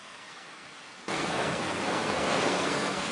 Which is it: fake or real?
fake